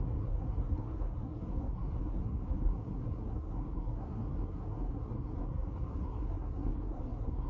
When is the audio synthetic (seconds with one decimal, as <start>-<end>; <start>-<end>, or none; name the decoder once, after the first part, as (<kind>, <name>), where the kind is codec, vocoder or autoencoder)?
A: 0.0-7.5 (codec, SNAC)